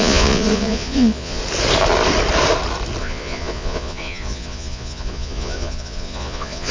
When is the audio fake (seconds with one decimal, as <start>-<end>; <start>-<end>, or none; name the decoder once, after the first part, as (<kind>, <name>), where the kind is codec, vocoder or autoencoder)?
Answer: 0.0-1.4 (vocoder, Vocos); 3.0-6.7